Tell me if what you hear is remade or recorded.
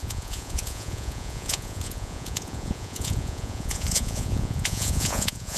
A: remade